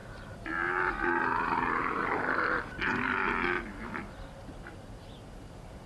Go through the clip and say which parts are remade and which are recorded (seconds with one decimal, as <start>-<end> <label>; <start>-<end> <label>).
0.0-0.9 remade; 0.9-5.9 recorded